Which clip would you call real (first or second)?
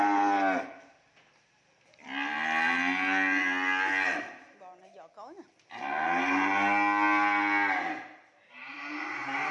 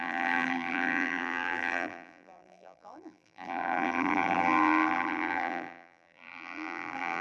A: first